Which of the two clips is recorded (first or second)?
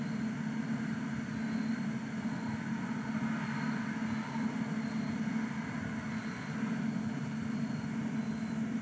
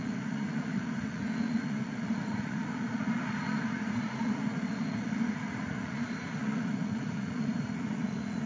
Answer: first